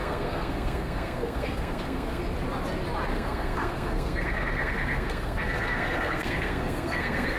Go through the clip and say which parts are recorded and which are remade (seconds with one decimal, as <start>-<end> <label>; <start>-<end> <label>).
0.0-2.2 remade; 2.2-3.1 recorded; 3.1-7.4 remade